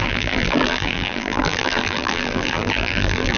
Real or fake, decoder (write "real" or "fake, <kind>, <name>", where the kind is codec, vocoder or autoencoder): fake, vocoder, BigVGAN v2